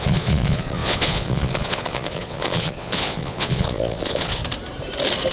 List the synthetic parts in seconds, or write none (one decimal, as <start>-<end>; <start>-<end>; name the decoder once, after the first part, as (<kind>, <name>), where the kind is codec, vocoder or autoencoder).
0.0-4.4 (vocoder, Vocos)